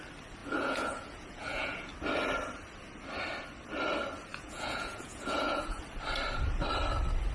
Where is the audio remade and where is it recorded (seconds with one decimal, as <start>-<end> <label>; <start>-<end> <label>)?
0.0-0.4 recorded; 0.4-1.9 remade; 1.9-4.3 recorded; 4.3-5.8 remade; 5.8-7.3 recorded